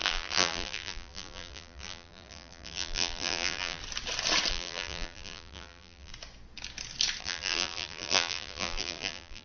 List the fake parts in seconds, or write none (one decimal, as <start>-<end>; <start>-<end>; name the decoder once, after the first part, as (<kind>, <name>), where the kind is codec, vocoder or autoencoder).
0.0-3.8 (vocoder, BigVGAN v2); 4.5-6.1; 7.2-9.4